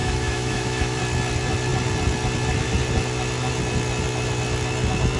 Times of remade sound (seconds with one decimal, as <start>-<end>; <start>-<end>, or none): 0.0-1.0